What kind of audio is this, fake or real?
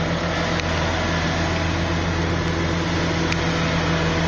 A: real